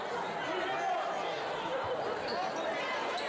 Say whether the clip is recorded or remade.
recorded